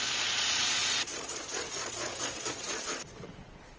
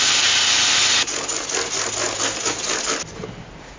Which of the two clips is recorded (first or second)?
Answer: second